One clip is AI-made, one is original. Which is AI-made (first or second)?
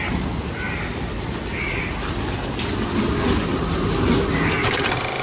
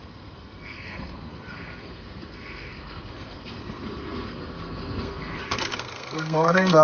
second